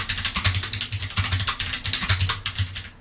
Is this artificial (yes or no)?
no